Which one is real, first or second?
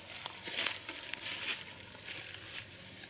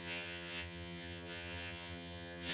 first